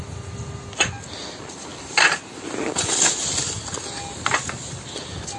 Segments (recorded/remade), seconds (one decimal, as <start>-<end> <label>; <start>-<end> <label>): 0.0-5.4 recorded